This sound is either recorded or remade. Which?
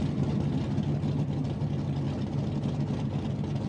recorded